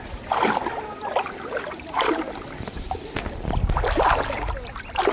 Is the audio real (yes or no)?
yes